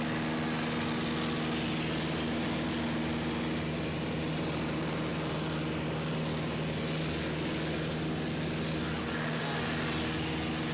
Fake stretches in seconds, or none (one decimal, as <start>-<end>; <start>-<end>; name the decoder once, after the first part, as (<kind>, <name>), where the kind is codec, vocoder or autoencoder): none